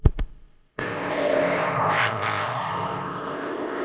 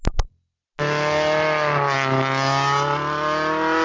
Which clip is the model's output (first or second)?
first